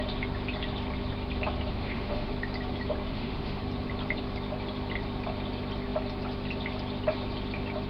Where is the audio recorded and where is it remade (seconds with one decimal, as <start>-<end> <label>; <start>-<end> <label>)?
0.0-1.7 recorded; 1.7-2.3 remade; 2.3-3.1 recorded; 3.1-3.6 remade; 3.6-7.9 recorded